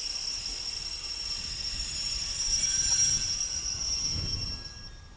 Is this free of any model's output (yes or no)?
yes